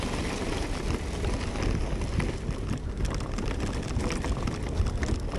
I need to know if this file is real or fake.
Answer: real